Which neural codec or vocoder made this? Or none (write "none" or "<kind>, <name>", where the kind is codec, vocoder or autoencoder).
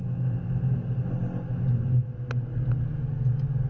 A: none